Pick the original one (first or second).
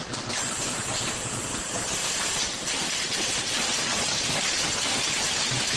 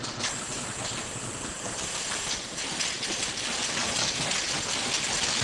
second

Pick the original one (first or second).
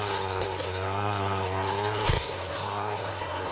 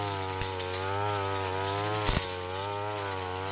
second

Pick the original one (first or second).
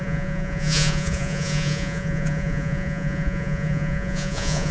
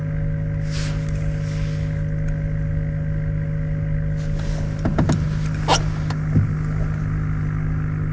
second